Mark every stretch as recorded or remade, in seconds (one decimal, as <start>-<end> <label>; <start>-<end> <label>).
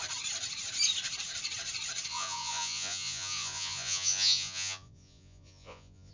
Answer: 0.0-2.1 recorded; 2.1-6.1 remade